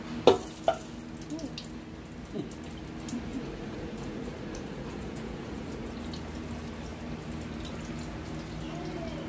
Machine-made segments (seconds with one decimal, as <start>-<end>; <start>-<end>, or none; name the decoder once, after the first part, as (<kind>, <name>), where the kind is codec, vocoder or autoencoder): 3.3-6.0 (vocoder, Vocos)